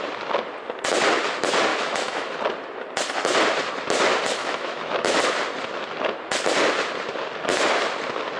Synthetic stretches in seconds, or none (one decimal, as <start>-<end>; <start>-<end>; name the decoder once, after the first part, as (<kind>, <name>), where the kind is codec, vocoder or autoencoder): 1.7-2.3 (autoencoder, DAC-VAE); 4.4-5.2